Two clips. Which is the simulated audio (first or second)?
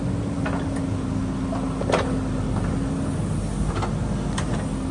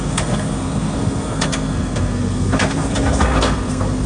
second